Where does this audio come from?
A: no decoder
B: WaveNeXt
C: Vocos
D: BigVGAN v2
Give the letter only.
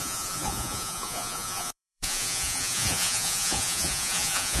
C